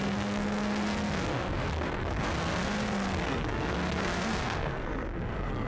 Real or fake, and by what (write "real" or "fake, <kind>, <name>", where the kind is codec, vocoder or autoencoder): fake, codec, SNAC